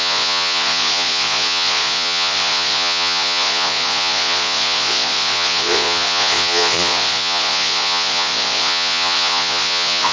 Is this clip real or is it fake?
fake